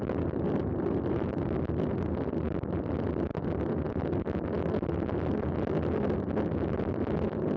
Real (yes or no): no